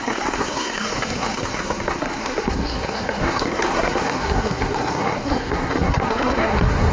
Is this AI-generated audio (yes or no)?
yes